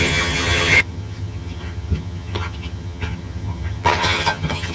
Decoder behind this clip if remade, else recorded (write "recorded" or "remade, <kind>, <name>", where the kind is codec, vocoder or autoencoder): remade, vocoder, HiFi-GAN